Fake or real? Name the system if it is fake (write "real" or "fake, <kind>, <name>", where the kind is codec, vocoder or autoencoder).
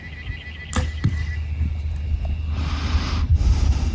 real